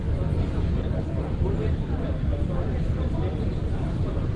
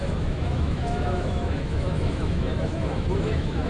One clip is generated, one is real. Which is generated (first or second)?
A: second